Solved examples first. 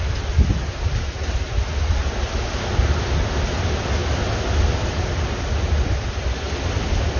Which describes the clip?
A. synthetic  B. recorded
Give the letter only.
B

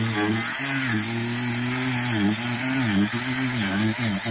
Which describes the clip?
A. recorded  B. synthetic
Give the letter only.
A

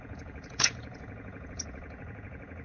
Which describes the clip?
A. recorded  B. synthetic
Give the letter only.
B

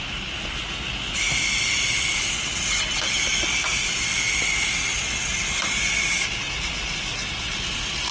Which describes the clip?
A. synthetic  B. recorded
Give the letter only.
B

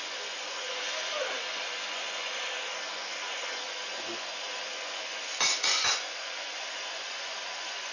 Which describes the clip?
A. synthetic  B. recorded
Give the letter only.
A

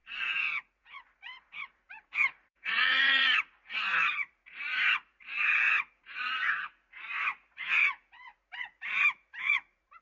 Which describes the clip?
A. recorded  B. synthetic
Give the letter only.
B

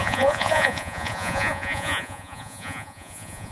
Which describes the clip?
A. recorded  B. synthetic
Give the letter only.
B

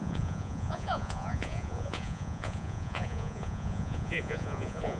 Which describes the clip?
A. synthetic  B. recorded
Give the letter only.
A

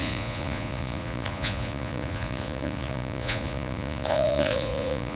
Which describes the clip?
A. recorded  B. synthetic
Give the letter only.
B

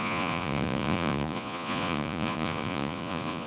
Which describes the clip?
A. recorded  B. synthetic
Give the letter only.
B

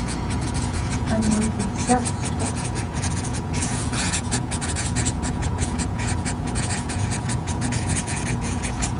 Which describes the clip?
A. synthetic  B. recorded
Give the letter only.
A